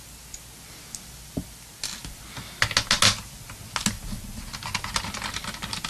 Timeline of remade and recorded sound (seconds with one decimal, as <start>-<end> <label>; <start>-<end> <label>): 0.0-5.9 recorded